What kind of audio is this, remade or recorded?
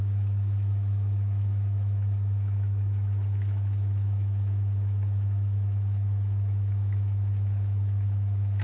remade